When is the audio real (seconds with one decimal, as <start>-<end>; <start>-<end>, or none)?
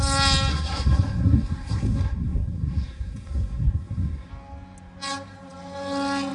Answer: 0.0-0.5; 4.3-6.3